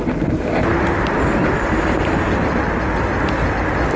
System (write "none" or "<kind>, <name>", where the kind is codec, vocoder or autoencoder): none